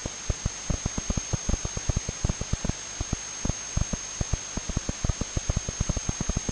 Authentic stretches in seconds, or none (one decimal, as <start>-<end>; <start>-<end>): 0.0-6.5